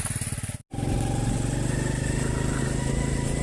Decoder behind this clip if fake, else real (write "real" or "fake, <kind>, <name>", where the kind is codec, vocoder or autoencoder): real